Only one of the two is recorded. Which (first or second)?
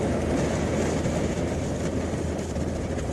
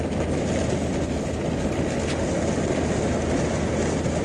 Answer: second